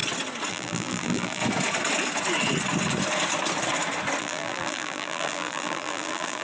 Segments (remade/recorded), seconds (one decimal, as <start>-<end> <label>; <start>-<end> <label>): 0.0-0.5 recorded; 0.5-1.4 remade; 1.4-4.2 recorded; 4.2-6.4 remade